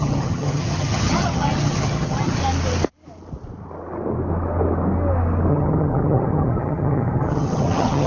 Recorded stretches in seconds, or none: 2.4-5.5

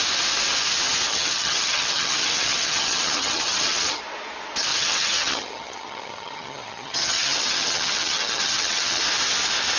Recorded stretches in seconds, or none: 0.0-1.1; 4.0-4.7; 9.0-9.8

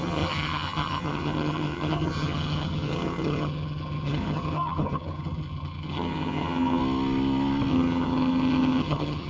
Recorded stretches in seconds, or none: 6.8-7.7

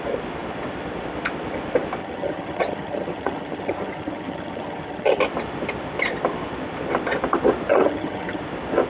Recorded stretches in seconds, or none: 0.0-2.0; 5.2-7.7; 8.4-8.9

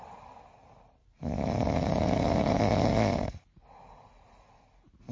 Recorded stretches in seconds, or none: 0.0-5.1

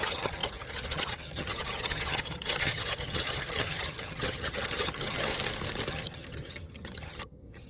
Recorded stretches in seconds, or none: 5.3-5.9

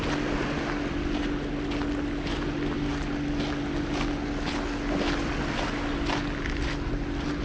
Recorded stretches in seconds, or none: 0.0-7.4

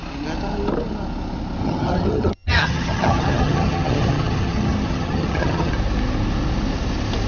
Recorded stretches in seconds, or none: 0.0-1.6; 5.7-7.3